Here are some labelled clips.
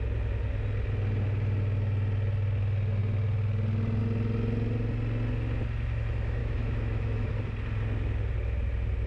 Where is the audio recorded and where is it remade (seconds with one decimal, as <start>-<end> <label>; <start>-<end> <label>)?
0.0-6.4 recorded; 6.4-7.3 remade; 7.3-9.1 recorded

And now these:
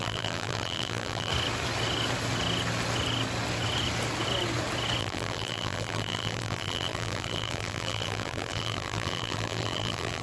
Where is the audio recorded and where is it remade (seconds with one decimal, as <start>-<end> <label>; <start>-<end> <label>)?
0.0-1.3 remade; 1.3-5.0 recorded; 5.0-10.2 remade

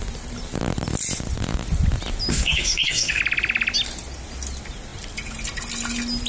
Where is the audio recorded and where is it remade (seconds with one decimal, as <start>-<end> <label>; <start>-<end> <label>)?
0.0-2.3 recorded; 2.3-3.2 remade; 3.2-6.3 recorded

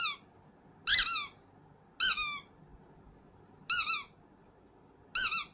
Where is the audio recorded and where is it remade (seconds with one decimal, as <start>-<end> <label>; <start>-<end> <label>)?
0.0-5.5 recorded

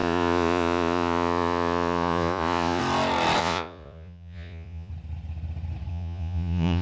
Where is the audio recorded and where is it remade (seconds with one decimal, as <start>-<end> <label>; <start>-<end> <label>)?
0.0-2.8 remade; 2.8-3.4 recorded; 3.4-4.9 remade; 4.9-5.9 recorded; 5.9-6.8 remade